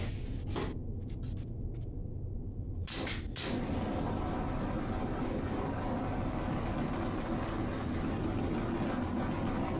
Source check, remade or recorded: recorded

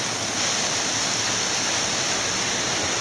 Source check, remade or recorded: recorded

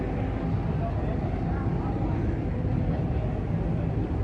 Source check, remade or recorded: recorded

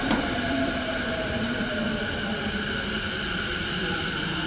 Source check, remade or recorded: remade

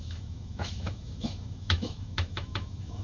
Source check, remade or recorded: remade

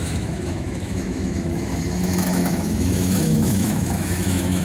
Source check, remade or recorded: remade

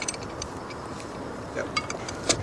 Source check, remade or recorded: remade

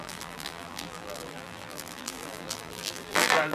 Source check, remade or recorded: remade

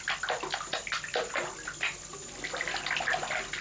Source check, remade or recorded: recorded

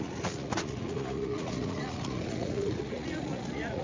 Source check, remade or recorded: remade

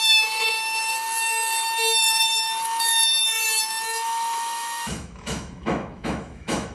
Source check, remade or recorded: remade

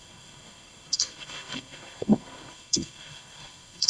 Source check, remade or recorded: remade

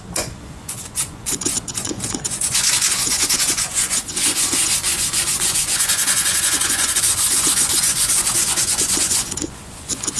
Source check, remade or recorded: remade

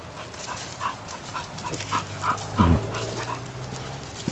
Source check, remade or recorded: recorded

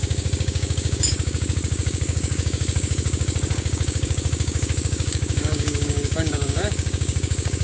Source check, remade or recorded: remade